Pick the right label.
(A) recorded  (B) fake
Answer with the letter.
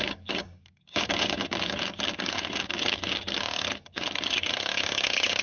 B